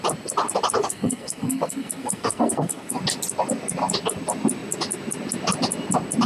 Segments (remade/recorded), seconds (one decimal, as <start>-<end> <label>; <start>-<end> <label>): 0.0-0.8 recorded; 0.8-3.0 remade; 3.0-6.3 recorded